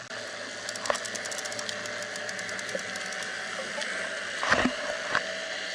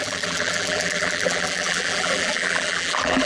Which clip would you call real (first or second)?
first